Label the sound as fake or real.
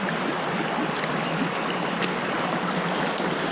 real